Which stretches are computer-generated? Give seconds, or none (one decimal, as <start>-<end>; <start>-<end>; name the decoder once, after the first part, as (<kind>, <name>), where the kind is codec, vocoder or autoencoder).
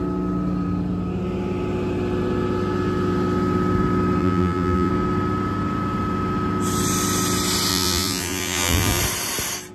4.2-4.9 (vocoder, BigVGAN v2); 7.7-9.0